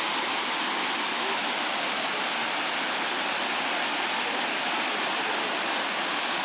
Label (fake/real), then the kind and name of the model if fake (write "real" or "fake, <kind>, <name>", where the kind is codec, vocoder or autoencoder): real